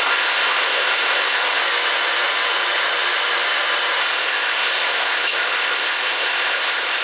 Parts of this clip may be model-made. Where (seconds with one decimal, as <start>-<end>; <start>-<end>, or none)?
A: 0.0-1.6; 4.0-7.0